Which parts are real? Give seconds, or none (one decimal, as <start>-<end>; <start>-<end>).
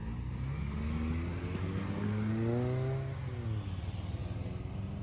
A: 0.0-5.0